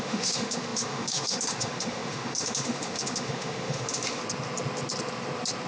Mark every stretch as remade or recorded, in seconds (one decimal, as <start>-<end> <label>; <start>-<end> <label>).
0.0-4.2 remade; 4.2-5.7 recorded